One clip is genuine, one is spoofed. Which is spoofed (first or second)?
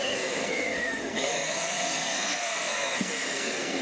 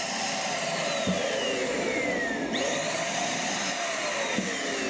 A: first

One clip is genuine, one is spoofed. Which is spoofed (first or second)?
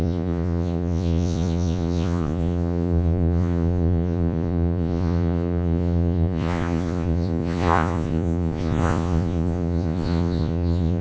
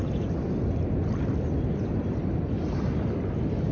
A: first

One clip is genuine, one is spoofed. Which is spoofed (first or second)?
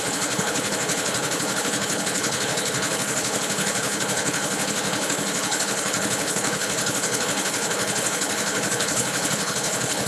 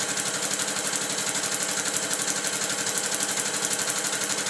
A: first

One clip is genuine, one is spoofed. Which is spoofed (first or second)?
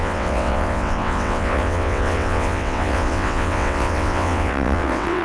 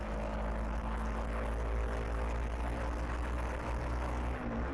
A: first